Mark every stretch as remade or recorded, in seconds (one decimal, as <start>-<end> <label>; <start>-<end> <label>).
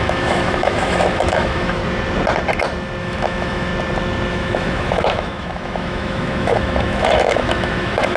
0.0-1.8 remade; 1.8-3.0 recorded; 3.0-3.7 remade; 3.7-4.3 recorded; 4.3-8.2 remade